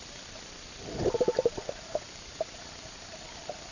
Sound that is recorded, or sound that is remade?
recorded